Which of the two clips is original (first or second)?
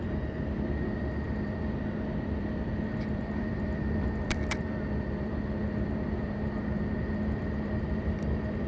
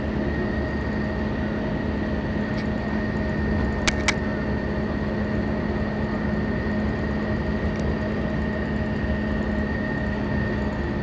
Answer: second